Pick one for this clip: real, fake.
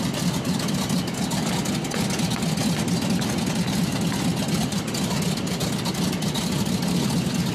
real